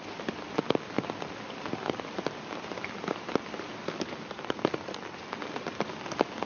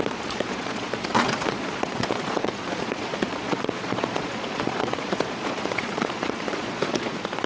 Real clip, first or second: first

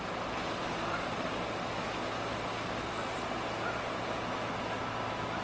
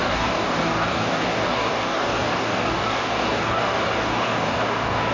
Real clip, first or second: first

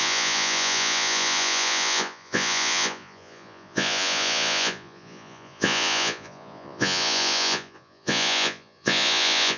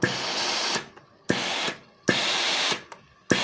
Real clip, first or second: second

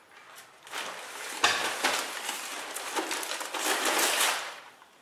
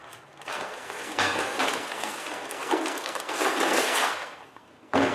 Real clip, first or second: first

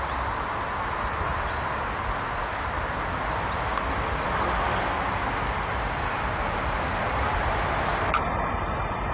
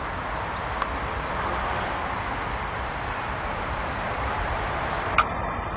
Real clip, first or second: first